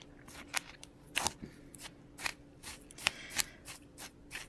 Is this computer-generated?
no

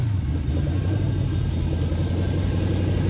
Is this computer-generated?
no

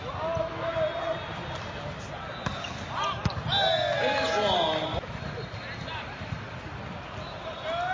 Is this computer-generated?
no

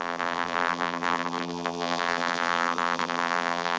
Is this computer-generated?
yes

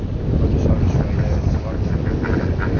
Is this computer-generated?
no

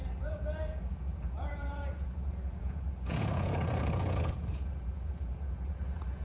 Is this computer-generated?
yes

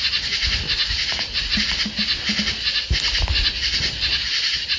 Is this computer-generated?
no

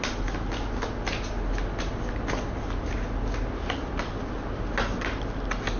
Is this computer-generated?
no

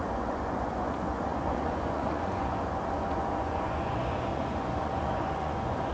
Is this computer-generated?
yes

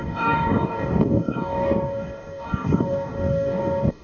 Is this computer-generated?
yes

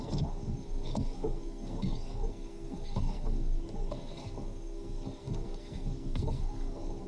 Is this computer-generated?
yes